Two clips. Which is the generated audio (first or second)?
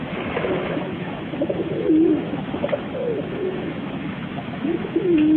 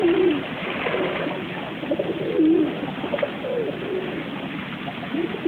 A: first